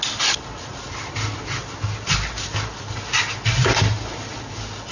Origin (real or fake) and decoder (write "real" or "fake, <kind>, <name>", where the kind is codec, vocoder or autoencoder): real